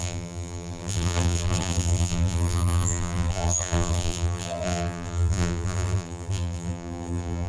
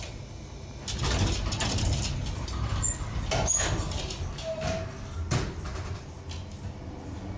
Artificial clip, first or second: first